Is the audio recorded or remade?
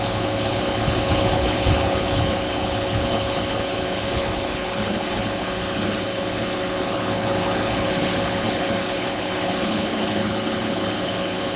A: remade